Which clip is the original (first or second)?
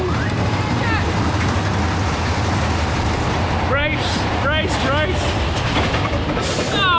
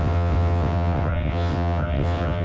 first